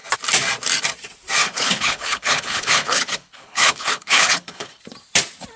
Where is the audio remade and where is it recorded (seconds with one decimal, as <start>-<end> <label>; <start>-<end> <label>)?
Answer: 0.0-1.4 recorded; 1.4-4.8 remade; 4.8-5.6 recorded